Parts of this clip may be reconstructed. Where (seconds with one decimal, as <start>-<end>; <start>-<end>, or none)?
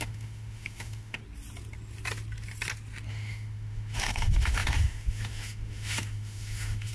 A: 0.0-1.2; 3.1-6.9